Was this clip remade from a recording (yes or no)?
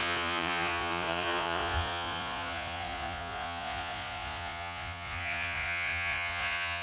yes